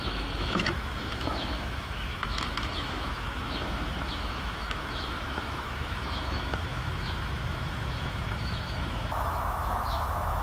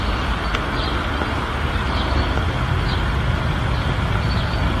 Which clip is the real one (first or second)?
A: second